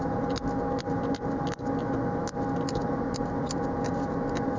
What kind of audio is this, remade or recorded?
recorded